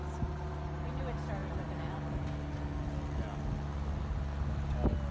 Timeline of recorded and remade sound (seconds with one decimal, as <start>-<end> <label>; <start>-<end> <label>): 0.0-5.1 recorded

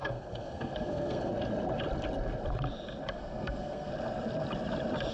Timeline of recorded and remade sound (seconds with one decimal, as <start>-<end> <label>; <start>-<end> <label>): 0.0-1.3 remade; 1.3-3.1 recorded; 3.1-3.9 remade; 3.9-5.1 recorded

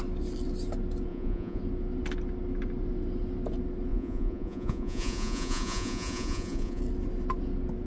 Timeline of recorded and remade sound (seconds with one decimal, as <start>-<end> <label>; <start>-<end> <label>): 0.0-1.1 recorded; 1.1-1.6 remade; 1.6-3.9 recorded; 3.9-6.8 remade; 6.8-7.9 recorded

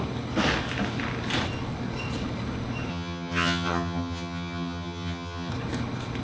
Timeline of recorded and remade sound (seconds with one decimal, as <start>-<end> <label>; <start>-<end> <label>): 0.0-2.9 recorded; 2.9-5.5 remade; 5.5-6.2 recorded

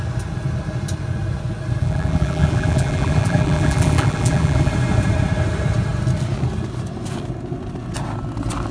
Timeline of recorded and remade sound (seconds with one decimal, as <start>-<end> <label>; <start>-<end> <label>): 0.0-1.8 recorded; 1.8-4.7 remade; 4.7-8.7 recorded

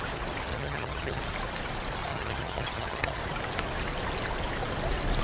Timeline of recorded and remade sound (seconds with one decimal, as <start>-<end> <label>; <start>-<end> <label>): 0.0-0.5 recorded; 0.5-1.2 remade; 1.2-2.1 recorded; 2.1-3.2 remade; 3.2-5.2 recorded